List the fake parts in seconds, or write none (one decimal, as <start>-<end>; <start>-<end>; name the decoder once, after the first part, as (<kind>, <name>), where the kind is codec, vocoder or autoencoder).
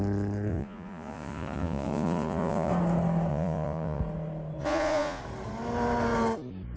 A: 0.5-2.7 (vocoder, Vocos); 3.3-4.0; 4.6-5.2